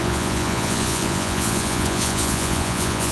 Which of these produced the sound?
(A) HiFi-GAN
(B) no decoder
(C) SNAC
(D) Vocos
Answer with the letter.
D